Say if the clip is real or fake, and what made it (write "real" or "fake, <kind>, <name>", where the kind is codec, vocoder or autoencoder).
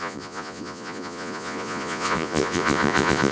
fake, vocoder, Vocos